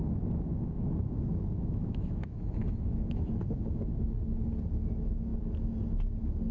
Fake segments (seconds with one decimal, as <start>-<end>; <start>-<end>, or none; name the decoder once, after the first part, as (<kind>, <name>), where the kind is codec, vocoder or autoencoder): 0.0-3.9 (autoencoder, DAC-VAE)